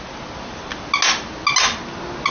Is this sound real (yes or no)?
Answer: yes